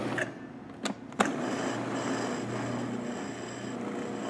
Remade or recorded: recorded